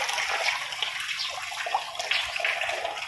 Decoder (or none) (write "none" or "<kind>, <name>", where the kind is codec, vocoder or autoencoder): none